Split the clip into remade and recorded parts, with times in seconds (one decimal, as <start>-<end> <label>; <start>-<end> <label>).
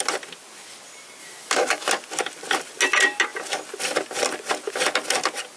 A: 0.0-1.2 recorded; 1.2-1.9 remade; 1.9-5.6 recorded